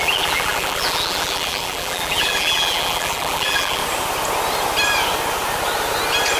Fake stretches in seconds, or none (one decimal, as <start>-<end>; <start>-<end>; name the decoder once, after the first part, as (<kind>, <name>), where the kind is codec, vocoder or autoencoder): 0.0-3.8 (vocoder, BigVGAN v2)